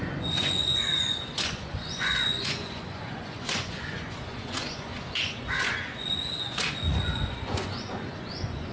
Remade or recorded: remade